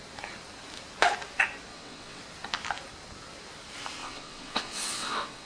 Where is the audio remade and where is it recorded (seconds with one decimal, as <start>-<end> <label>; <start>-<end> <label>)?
0.0-1.7 recorded; 1.7-2.2 remade; 2.2-4.0 recorded; 4.0-5.5 remade